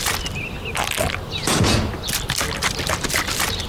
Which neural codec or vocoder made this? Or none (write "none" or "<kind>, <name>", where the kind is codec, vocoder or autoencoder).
none